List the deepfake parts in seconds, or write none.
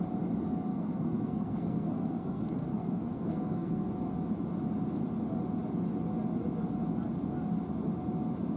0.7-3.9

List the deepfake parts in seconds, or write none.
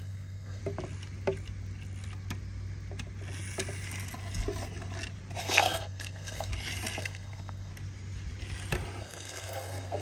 0.0-0.6; 5.4-6.5; 7.0-7.7; 9.0-10.0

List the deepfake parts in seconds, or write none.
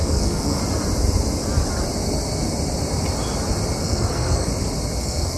0.0-0.6; 3.8-4.5; 5.0-5.4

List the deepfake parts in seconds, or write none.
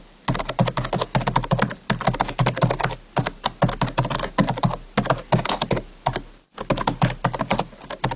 none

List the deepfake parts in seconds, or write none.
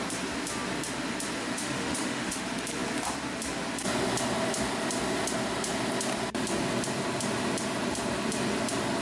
1.4-2.4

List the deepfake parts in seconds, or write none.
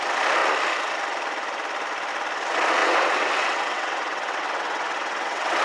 2.8-5.6